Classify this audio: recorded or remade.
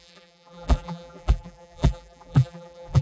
remade